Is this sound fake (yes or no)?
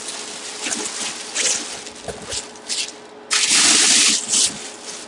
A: no